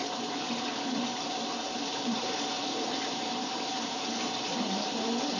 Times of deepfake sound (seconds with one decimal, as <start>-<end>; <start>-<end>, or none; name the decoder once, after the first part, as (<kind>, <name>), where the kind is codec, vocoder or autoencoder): 1.9-4.0 (vocoder, BigVGAN v2)